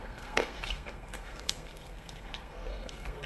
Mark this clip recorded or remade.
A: remade